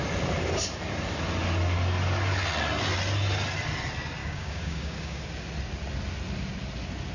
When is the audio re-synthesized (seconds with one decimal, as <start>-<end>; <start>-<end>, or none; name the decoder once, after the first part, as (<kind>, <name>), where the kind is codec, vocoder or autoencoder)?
4.2-5.2 (codec, DAC)